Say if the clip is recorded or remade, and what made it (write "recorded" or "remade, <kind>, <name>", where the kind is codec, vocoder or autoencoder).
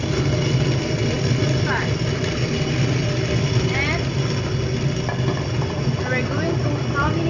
recorded